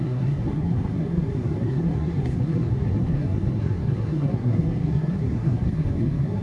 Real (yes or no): no